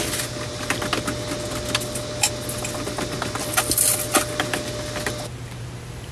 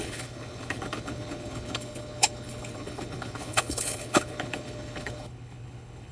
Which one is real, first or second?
first